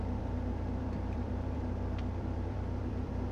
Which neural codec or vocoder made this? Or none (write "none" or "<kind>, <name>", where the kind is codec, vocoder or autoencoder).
vocoder, BigVGAN v2